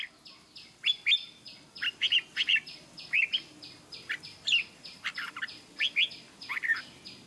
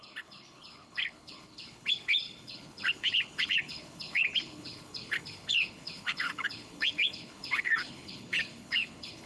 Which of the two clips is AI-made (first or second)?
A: second